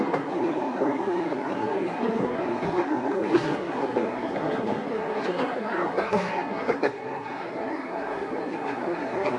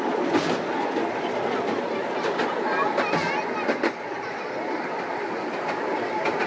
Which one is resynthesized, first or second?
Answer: first